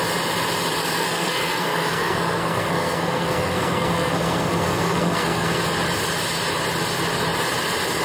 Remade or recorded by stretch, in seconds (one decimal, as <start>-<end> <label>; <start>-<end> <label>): 0.0-0.8 recorded; 0.8-5.6 remade; 5.6-8.0 recorded

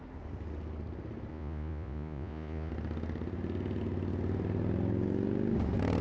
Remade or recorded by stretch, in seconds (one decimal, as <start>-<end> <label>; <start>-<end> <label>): 0.0-1.3 recorded; 1.3-2.7 remade; 2.7-6.0 recorded

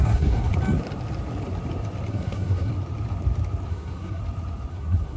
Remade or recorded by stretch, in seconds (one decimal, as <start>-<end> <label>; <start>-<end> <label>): 0.0-0.5 remade; 0.5-2.1 recorded; 2.1-2.7 remade; 2.7-3.7 recorded; 3.7-4.2 remade; 4.2-4.7 recorded; 4.7-5.2 remade

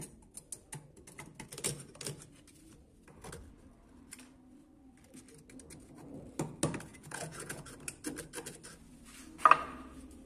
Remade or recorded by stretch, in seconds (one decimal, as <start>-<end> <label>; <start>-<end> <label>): 0.0-6.9 recorded; 6.9-7.7 remade; 7.7-10.3 recorded